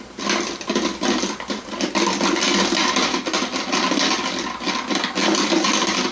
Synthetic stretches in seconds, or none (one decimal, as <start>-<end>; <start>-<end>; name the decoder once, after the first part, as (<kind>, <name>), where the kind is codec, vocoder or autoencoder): none